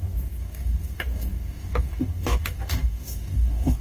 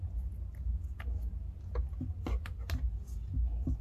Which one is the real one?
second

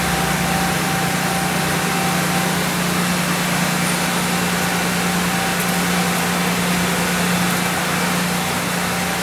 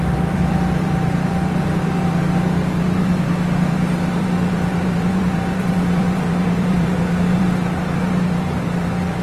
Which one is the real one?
first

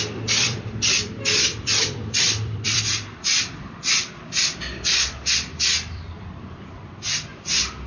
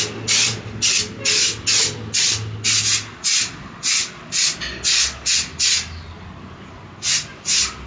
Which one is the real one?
second